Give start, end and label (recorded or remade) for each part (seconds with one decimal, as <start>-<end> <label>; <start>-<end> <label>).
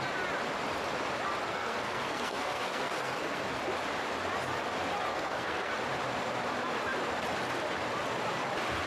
0.0-1.5 recorded; 1.5-3.6 remade; 3.6-5.1 recorded; 5.1-5.7 remade; 5.7-8.9 recorded